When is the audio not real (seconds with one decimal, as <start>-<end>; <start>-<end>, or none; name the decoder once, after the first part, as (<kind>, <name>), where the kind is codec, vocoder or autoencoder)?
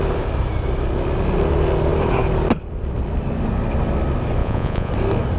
4.4-4.9 (vocoder, Vocos)